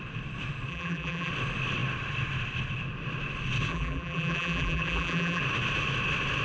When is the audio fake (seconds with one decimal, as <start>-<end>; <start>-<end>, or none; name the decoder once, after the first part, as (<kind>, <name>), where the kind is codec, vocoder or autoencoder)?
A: 0.7-1.3 (vocoder, BigVGAN v2); 3.7-5.4